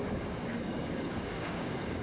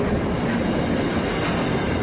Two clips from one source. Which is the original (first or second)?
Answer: second